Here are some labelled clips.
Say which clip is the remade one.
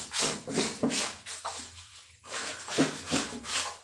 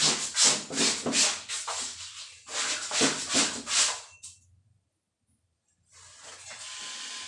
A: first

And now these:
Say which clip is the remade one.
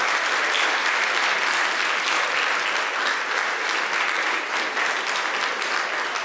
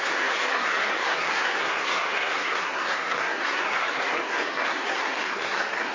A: second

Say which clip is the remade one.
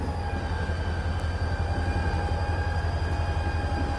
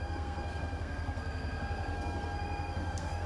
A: second